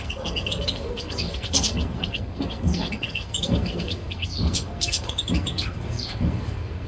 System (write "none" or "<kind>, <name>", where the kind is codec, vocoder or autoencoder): codec, SNAC